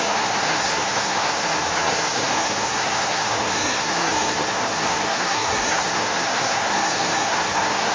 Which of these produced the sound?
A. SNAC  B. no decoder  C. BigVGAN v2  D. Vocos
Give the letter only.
A